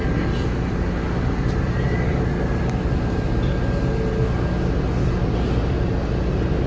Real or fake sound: real